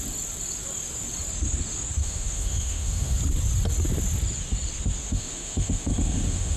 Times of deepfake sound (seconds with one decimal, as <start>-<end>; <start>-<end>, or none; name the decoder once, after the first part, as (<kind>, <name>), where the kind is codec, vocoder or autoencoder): 2.0-3.2 (autoencoder, DAC-VAE); 5.0-6.6